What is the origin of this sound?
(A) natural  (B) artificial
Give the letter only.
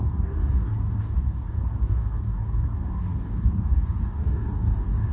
B